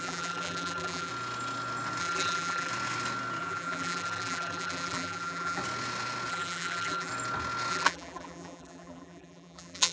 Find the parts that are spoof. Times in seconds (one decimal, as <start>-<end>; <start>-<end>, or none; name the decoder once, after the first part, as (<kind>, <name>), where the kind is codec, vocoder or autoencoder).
0.0-1.1 (vocoder, BigVGAN v2); 2.0-2.7; 3.4-5.6; 6.3-7.1; 7.7-9.9